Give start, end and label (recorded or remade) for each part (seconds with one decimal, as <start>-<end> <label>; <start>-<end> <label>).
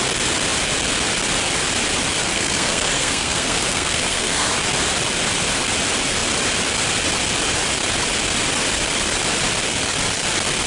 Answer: 0.0-2.3 recorded; 2.3-4.5 remade; 4.5-10.7 recorded